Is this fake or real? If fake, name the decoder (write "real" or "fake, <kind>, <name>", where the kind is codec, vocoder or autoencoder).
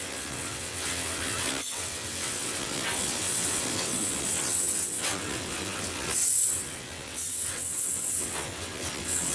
fake, vocoder, WaveNeXt